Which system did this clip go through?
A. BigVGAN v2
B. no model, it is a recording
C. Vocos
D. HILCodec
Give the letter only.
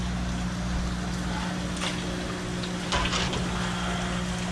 B